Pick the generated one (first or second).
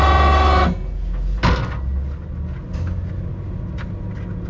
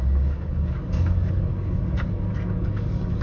second